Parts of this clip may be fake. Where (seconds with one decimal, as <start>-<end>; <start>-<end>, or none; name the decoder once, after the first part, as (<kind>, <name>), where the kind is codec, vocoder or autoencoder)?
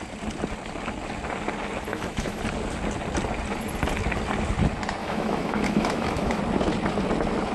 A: 1.9-2.4 (autoencoder, DAC-VAE); 5.0-6.4